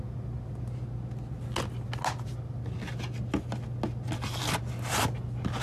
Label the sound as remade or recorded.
recorded